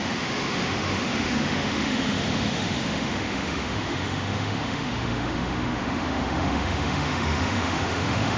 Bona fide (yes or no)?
no